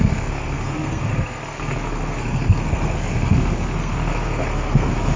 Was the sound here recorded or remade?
remade